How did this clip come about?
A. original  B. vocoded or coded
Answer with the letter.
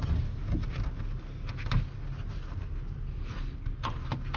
A